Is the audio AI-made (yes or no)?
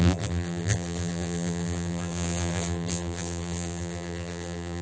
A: yes